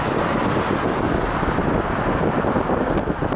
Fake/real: real